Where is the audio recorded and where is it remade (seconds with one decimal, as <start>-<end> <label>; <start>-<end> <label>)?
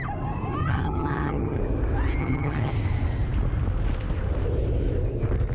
0.0-0.6 recorded; 0.6-1.6 remade; 1.6-2.2 recorded; 2.2-2.7 remade; 2.7-5.5 recorded